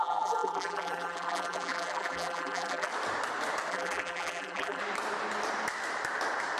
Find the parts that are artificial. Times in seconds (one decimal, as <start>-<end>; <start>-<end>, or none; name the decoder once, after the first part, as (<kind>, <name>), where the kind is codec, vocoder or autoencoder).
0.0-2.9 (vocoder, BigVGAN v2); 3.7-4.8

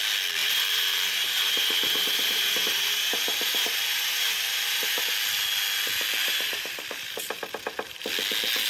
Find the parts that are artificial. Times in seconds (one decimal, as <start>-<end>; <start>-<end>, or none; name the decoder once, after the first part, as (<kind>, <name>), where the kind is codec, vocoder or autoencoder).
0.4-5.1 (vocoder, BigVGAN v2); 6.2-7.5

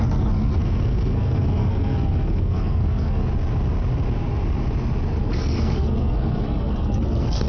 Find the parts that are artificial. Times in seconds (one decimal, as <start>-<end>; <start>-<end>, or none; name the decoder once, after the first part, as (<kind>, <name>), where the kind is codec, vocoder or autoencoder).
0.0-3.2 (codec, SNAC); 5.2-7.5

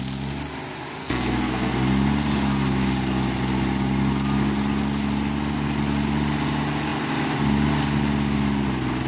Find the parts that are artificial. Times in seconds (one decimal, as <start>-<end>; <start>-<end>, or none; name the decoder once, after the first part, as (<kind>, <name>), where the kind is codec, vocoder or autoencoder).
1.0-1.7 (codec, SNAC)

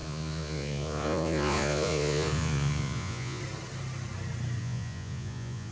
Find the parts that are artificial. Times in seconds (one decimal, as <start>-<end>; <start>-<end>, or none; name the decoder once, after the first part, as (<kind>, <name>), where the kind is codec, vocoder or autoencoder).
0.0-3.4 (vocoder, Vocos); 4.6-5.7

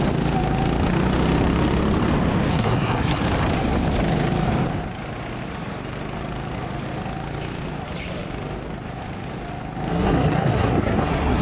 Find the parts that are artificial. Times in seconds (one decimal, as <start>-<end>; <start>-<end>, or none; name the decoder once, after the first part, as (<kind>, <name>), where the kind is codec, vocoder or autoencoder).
2.5-3.2 (codec, SNAC); 9.9-11.4

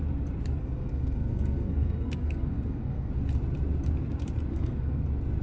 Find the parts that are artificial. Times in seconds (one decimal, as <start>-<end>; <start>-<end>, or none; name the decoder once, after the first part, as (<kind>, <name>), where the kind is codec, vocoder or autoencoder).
0.6-3.1 (codec, SNAC); 4.5-5.0